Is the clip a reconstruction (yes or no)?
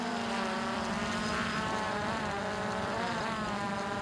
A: yes